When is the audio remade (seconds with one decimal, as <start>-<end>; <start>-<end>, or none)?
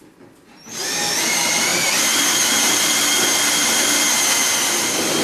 1.7-2.9